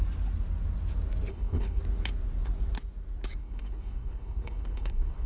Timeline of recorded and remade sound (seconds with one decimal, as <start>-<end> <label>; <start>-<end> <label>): 0.0-1.3 recorded; 1.3-1.8 remade; 1.8-3.4 recorded; 3.4-5.3 remade